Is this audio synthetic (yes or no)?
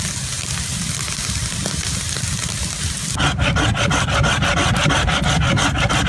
no